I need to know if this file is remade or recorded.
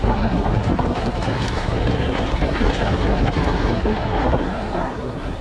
remade